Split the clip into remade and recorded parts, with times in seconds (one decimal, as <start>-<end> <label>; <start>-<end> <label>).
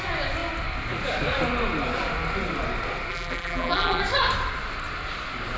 0.0-3.1 recorded; 3.1-4.0 remade; 4.0-5.6 recorded